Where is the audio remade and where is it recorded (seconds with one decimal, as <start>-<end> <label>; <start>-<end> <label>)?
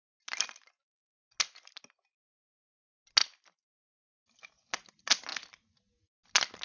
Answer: 0.0-6.6 recorded